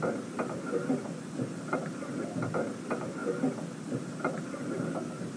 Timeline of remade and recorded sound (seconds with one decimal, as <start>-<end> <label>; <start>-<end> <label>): 0.0-1.0 recorded; 1.0-1.6 remade; 1.6-5.4 recorded